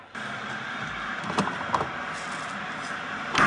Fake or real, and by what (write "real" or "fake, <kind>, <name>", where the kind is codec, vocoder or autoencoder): real